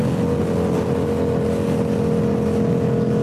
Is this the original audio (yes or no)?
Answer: yes